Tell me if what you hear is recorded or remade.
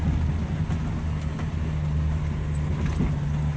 recorded